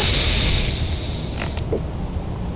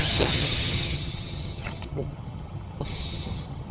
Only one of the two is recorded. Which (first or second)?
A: first